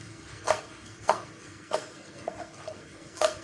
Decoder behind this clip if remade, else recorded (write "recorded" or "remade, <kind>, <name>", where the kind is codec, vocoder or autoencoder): remade, codec, SNAC